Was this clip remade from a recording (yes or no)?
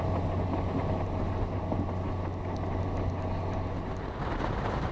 no